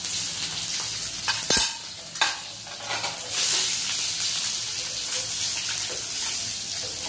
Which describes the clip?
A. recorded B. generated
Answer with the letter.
A